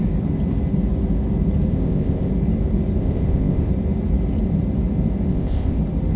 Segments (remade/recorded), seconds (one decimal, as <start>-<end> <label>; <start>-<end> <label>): 0.0-1.7 recorded; 1.7-2.3 remade; 2.3-3.0 recorded; 3.0-3.7 remade; 3.7-5.3 recorded; 5.3-5.8 remade; 5.8-6.2 recorded